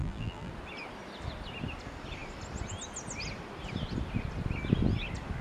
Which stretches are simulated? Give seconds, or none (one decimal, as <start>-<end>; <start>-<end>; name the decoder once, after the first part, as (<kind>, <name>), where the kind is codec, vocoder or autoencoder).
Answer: 0.0-0.5 (vocoder, BigVGAN v2)